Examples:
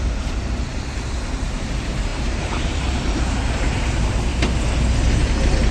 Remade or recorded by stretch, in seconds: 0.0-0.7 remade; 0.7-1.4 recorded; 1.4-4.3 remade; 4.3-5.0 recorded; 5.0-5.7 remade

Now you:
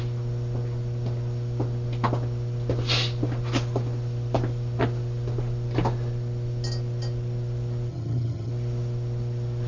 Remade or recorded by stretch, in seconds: 0.0-7.9 recorded; 7.9-8.5 remade; 8.5-9.7 recorded

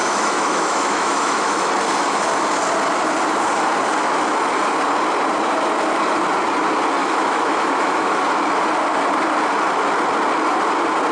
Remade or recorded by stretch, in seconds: 0.0-1.7 remade; 1.7-7.0 recorded; 7.0-8.2 remade; 8.2-11.1 recorded